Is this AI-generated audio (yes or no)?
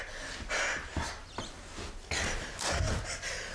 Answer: no